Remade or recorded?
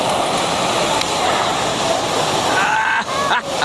recorded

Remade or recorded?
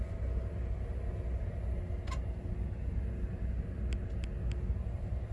recorded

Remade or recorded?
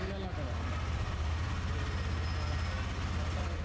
recorded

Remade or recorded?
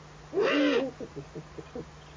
recorded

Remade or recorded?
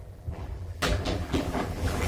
remade